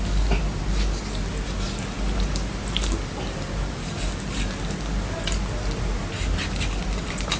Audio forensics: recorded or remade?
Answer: recorded